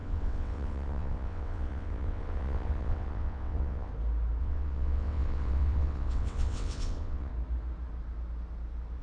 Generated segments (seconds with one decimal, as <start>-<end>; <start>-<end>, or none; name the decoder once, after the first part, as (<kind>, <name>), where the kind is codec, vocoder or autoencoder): 0.0-3.9 (vocoder, WaveNeXt); 4.4-7.3